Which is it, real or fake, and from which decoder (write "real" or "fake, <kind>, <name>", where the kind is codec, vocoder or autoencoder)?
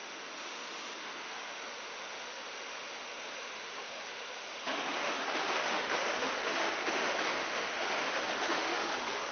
fake, autoencoder, DAC-VAE